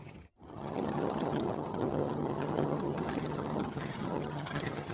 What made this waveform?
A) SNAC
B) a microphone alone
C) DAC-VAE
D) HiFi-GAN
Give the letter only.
D